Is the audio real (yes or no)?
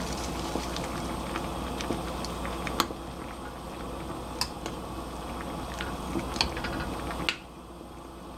yes